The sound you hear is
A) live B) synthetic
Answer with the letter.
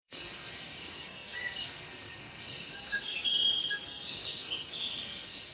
B